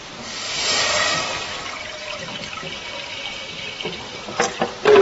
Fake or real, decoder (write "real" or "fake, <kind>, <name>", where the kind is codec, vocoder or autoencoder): real